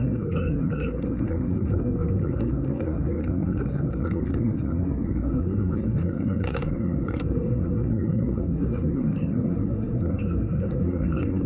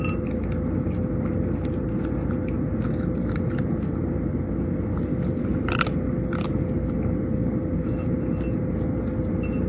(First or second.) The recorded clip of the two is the second